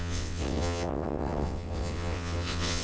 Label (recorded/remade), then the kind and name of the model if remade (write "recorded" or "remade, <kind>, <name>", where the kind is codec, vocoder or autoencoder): remade, vocoder, WaveNeXt